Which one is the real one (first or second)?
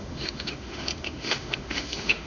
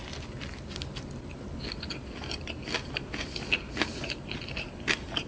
second